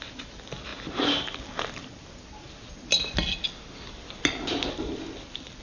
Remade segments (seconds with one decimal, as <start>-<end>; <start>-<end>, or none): none